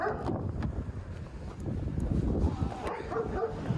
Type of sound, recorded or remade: recorded